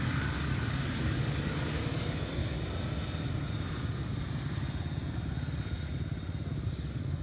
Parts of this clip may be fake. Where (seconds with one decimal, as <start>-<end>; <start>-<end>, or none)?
0.0-2.4; 6.7-7.2